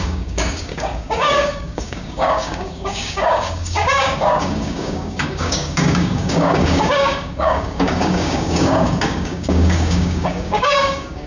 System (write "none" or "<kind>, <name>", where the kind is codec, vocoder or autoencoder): codec, DAC